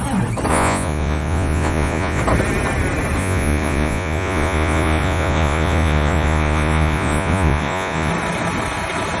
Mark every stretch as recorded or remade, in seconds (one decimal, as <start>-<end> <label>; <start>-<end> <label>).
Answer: 0.0-0.5 recorded; 0.5-2.2 remade; 2.2-3.2 recorded; 3.2-8.1 remade; 8.1-9.2 recorded